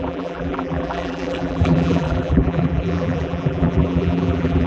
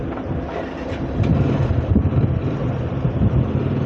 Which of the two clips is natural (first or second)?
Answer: second